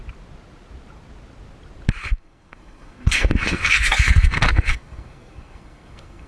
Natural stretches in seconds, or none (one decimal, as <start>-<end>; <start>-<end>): 0.0-2.0